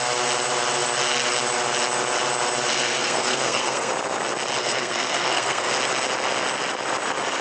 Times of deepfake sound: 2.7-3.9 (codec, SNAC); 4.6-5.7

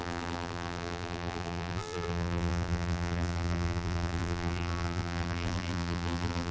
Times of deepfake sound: 0.0-6.5 (vocoder, BigVGAN v2)

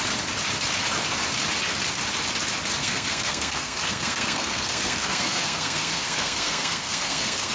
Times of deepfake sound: 2.8-7.5 (codec, SNAC)

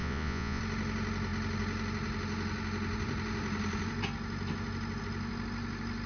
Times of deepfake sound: 0.0-0.6 (vocoder, Vocos)

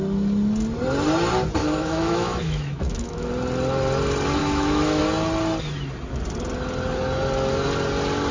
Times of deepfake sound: 1.6-3.3 (autoencoder, DAC-VAE); 4.4-5.0